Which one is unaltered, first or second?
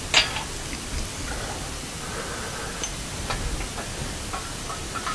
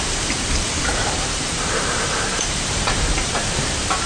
first